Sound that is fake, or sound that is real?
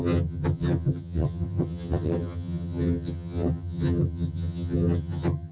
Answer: fake